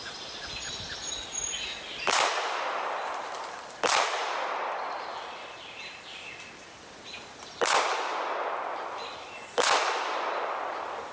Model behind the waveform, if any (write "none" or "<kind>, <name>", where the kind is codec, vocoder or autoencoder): none